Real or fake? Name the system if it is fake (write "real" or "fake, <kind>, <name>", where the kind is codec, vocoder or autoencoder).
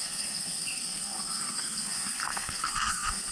fake, codec, SNAC